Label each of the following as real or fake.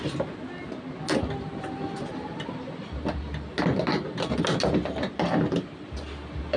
real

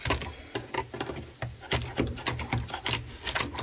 real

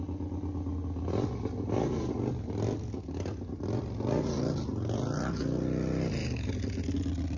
real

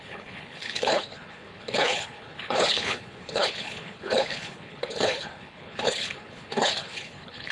fake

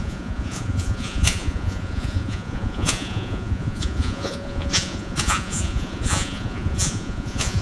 fake